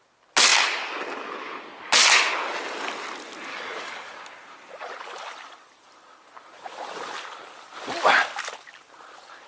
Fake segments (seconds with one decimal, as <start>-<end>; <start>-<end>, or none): 3.5-4.2